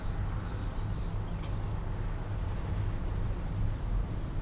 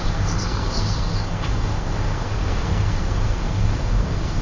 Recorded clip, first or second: first